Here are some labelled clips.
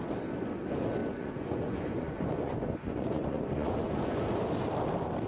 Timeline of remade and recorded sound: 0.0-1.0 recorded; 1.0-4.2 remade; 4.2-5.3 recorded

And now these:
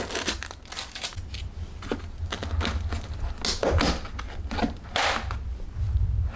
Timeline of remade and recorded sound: 0.0-6.4 recorded

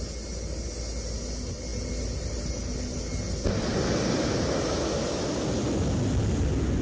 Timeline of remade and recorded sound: 0.0-6.8 recorded

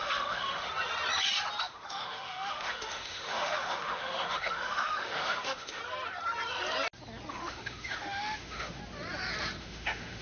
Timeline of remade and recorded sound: 0.0-0.7 remade; 0.7-1.6 recorded; 1.6-5.8 remade; 5.8-7.3 recorded; 7.3-8.8 remade; 8.8-9.6 recorded; 9.6-10.2 remade

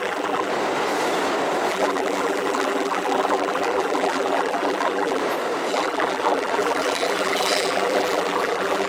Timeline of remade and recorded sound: 0.0-0.5 remade; 0.5-1.7 recorded; 1.7-5.2 remade; 5.2-5.7 recorded; 5.7-8.9 remade

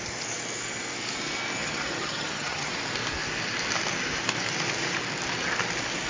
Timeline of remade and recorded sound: 0.0-1.6 recorded; 1.6-2.7 remade; 2.7-6.1 recorded

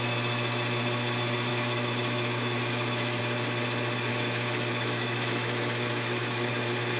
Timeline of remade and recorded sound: 0.0-1.5 recorded; 1.5-3.2 remade; 3.2-4.1 recorded; 4.1-6.5 remade; 6.5-7.0 recorded